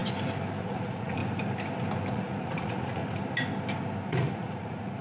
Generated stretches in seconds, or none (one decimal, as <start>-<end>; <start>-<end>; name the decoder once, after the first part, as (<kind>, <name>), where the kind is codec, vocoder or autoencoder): 0.6-1.2 (vocoder, Vocos); 2.1-3.0; 4.1-5.0